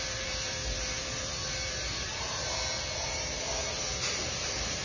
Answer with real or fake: fake